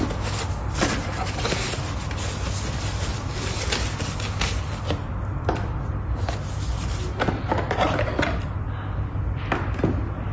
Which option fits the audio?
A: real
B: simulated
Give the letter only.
A